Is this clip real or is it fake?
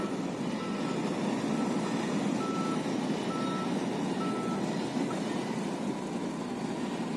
real